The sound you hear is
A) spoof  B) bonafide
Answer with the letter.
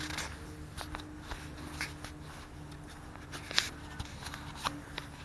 B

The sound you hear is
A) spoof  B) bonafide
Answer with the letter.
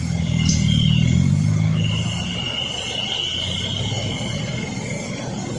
B